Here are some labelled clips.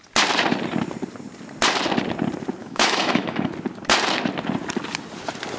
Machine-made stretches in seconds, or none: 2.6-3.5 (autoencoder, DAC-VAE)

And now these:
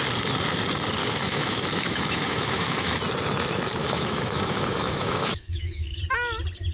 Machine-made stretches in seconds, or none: 1.0-3.0 (autoencoder, DAC-VAE); 3.8-6.0

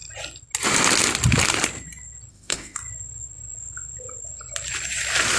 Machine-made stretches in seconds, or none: 2.3-2.8 (autoencoder, DAC-VAE)